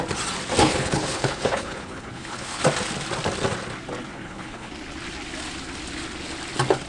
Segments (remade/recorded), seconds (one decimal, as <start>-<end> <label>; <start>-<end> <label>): 0.0-0.6 recorded; 0.6-2.6 remade; 2.6-4.1 recorded; 4.1-4.7 remade; 4.7-6.9 recorded